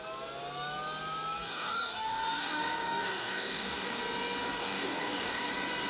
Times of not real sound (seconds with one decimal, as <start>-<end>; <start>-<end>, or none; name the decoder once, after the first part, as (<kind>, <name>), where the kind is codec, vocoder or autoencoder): 1.4-4.0 (codec, DAC); 4.6-5.5